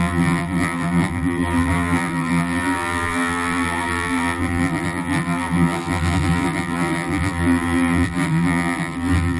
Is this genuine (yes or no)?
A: no